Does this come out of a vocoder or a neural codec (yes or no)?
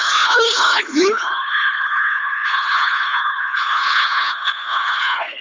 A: yes